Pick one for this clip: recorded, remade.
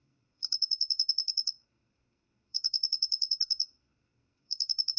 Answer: remade